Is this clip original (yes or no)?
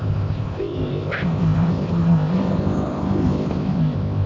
no